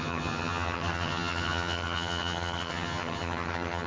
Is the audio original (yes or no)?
no